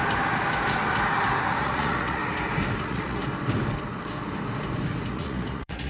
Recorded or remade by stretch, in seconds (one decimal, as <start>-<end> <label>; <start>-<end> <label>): 0.0-1.6 recorded; 1.6-2.2 remade; 2.2-2.8 recorded; 2.8-3.2 remade; 3.2-5.1 recorded; 5.1-5.9 remade